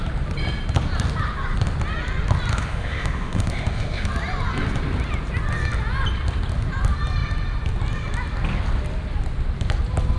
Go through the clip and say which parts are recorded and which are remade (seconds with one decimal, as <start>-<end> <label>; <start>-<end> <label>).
0.0-2.5 recorded; 2.5-4.1 remade; 4.1-10.2 recorded